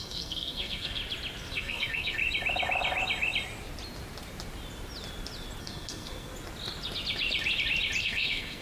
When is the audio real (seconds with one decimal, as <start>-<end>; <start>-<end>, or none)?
1.0-1.5; 2.2-5.6; 6.3-8.0